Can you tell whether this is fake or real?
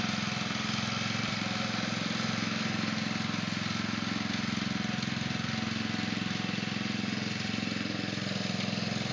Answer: real